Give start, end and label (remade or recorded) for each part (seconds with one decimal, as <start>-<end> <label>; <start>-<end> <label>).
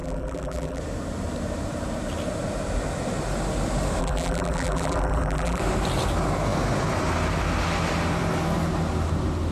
0.0-0.8 remade; 0.8-4.0 recorded; 4.0-5.6 remade; 5.6-9.5 recorded